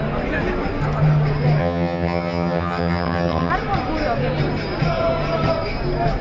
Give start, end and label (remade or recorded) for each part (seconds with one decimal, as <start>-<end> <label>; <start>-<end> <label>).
0.0-1.6 recorded; 1.6-3.5 remade; 3.5-6.2 recorded

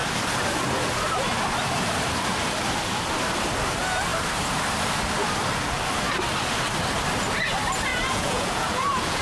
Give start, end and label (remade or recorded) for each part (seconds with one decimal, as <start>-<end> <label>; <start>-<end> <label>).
0.0-7.9 recorded; 7.9-9.2 remade